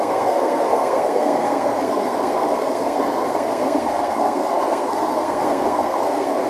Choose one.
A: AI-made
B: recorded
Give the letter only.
A